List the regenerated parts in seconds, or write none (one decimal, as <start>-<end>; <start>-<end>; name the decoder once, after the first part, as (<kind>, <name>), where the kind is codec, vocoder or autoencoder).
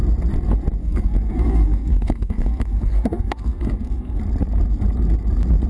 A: 0.8-4.2 (codec, SNAC)